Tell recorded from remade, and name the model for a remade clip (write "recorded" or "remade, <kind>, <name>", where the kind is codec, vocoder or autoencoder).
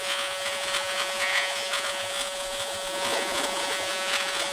remade, vocoder, Vocos